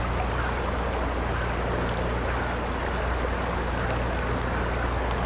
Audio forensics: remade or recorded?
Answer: recorded